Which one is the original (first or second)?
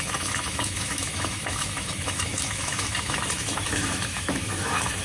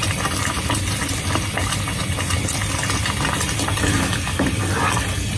second